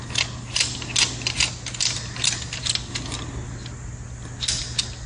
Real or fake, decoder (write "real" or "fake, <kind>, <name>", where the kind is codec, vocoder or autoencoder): real